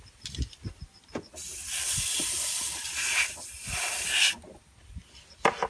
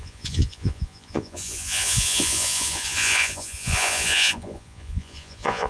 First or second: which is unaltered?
first